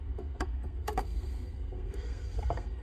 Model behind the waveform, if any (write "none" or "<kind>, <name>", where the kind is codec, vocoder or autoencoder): codec, SNAC